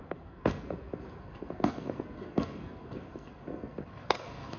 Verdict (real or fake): fake